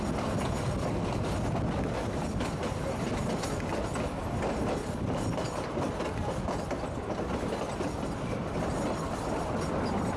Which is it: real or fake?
real